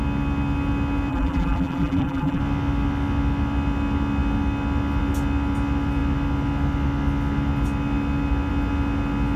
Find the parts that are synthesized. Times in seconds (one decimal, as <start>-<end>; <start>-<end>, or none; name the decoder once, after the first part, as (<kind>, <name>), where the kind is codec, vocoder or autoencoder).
1.1-2.4 (vocoder, BigVGAN v2)